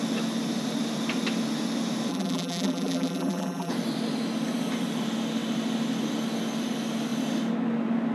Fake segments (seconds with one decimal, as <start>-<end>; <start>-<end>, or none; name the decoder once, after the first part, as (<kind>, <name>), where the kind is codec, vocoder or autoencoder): 2.1-3.7 (vocoder, BigVGAN v2)